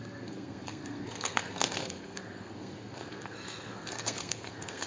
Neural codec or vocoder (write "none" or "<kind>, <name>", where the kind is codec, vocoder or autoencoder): codec, SNAC